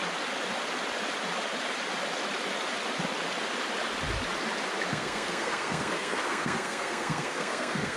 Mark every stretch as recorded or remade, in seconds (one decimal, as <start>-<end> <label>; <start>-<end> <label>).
0.0-4.9 recorded; 4.9-8.0 remade